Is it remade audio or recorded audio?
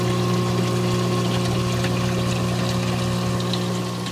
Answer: recorded